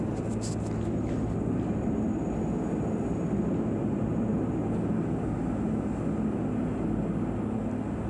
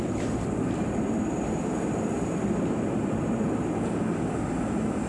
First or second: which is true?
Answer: first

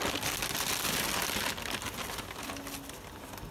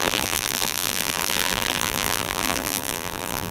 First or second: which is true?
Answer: first